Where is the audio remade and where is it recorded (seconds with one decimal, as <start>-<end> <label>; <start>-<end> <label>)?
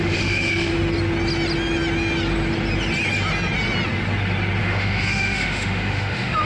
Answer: 0.0-0.7 remade; 0.7-4.6 recorded; 4.6-6.5 remade